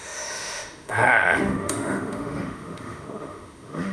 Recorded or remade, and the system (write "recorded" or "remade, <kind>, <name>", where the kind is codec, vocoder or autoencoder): remade, autoencoder, DAC-VAE